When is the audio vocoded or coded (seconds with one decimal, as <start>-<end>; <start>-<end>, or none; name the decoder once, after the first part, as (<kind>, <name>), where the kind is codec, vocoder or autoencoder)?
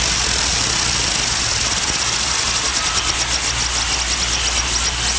none